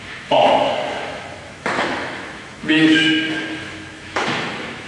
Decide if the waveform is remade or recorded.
remade